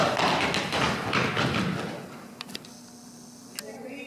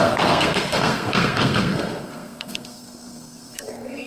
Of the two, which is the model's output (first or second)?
second